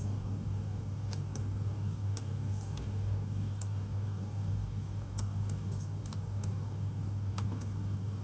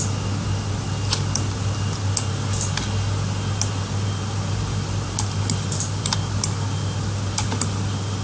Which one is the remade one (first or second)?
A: first